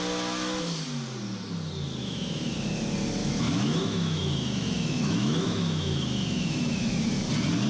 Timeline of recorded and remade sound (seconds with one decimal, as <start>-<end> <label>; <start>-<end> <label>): 0.0-2.0 recorded; 2.0-2.5 remade; 2.5-3.2 recorded; 3.2-7.0 remade; 7.0-7.7 recorded